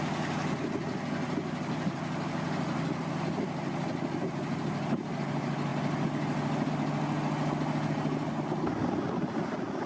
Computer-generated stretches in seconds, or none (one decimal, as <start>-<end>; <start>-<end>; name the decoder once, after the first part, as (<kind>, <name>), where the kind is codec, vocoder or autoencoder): none